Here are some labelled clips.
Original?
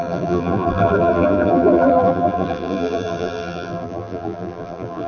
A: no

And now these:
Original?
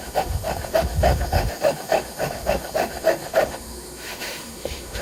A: no